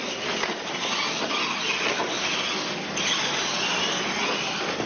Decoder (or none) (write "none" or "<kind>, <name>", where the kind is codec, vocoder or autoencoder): none